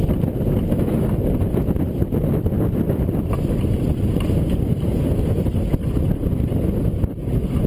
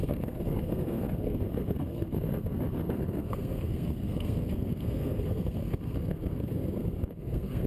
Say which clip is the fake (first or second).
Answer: second